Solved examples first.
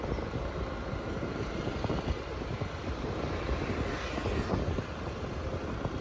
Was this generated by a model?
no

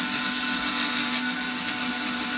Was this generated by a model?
no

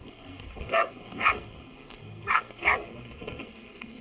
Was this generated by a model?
yes